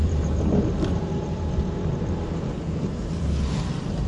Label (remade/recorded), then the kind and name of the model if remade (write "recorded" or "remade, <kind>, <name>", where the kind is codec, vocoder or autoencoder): remade, vocoder, BigVGAN v2